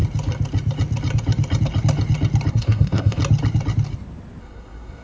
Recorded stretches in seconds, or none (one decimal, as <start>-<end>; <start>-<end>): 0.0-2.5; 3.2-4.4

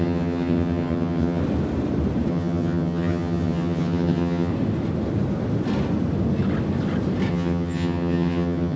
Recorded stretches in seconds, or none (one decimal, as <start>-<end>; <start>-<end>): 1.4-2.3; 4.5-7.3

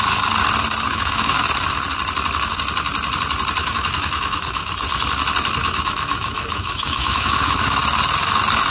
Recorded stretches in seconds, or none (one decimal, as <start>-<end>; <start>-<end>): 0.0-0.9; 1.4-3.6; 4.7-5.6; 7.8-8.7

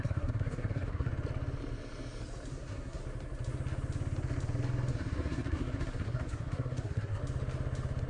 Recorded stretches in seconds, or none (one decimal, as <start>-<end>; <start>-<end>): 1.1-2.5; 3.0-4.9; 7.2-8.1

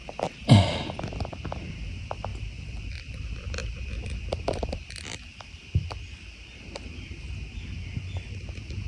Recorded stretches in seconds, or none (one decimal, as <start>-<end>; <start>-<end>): 1.7-2.3; 7.3-8.9

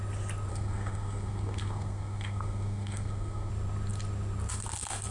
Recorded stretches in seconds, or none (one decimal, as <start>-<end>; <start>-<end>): 0.0-0.5; 3.5-5.1

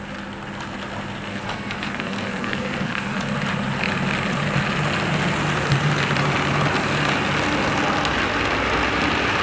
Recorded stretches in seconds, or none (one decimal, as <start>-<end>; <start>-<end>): 0.0-1.3; 3.2-9.4